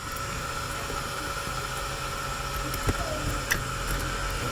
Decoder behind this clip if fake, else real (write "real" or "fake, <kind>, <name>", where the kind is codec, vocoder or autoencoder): real